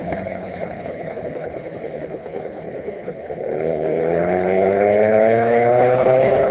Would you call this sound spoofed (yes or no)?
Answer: yes